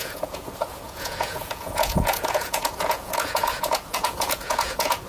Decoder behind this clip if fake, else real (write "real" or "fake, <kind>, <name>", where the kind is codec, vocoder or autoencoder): fake, vocoder, Vocos